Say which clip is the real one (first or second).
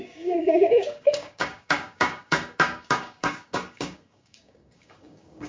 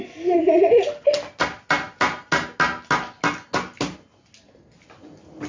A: second